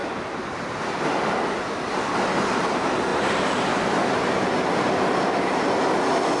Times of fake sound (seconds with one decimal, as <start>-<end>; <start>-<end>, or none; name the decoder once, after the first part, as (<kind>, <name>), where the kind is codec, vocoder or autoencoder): 0.0-1.2 (vocoder, BigVGAN v2)